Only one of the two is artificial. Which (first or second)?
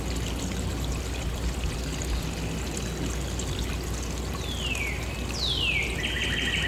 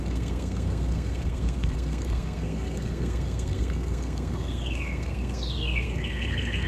second